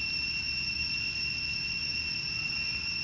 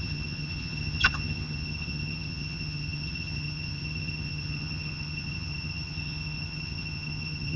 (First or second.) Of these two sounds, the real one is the first